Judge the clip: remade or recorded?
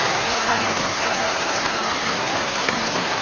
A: remade